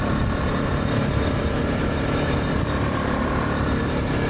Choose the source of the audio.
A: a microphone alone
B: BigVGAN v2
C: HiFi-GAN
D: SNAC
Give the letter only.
B